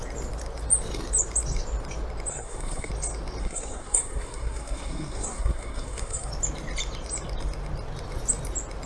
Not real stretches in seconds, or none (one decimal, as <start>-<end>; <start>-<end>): 2.3-2.9; 3.4-6.3